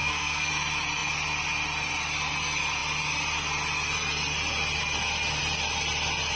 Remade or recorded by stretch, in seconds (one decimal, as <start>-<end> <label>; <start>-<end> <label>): 0.0-0.5 remade; 0.5-6.4 recorded